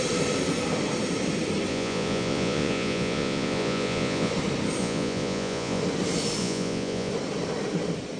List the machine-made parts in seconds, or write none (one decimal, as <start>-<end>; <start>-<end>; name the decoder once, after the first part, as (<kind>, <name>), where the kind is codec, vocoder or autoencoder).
1.7-4.3 (vocoder, Vocos); 4.8-5.8; 6.4-7.1